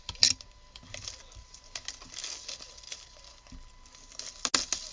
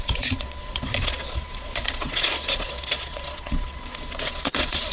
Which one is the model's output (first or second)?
second